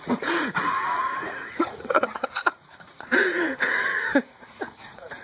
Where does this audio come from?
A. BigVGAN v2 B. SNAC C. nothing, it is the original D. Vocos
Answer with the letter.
D